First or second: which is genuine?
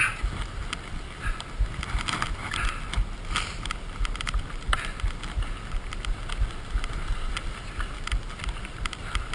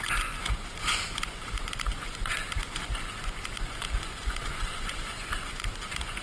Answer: first